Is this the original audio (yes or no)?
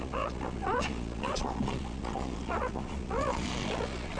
no